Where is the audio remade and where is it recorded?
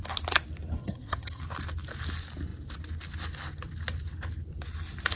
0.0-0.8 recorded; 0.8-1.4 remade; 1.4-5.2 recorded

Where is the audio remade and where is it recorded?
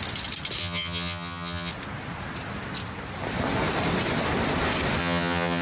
0.0-0.6 recorded; 0.6-1.7 remade; 1.7-5.0 recorded; 5.0-5.6 remade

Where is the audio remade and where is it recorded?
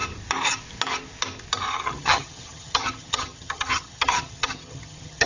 0.0-1.7 recorded; 1.7-5.3 remade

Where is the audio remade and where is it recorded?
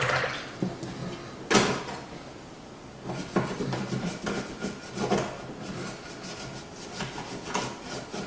0.0-8.3 recorded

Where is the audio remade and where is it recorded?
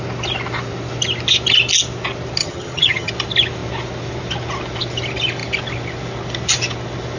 0.0-2.4 recorded; 2.4-3.1 remade; 3.1-7.2 recorded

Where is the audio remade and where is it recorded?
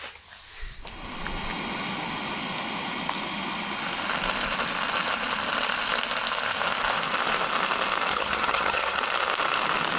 0.0-8.1 recorded; 8.1-9.0 remade; 9.0-10.0 recorded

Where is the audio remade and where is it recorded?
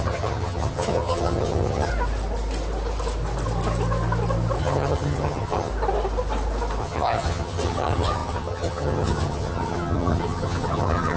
0.0-1.9 remade; 1.9-4.6 recorded; 4.6-5.7 remade; 5.7-6.8 recorded; 6.8-11.2 remade